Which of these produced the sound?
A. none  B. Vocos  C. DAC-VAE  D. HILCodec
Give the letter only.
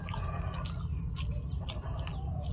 A